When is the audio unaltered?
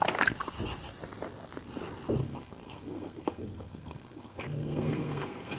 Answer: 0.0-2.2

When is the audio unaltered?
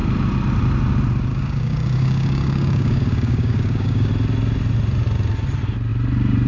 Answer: 0.0-1.3; 4.1-6.5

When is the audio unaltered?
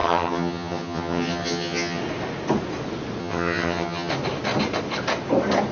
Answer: 2.0-3.2; 4.1-5.7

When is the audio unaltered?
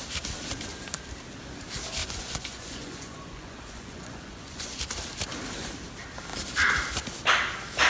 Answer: 0.0-2.0; 4.8-7.9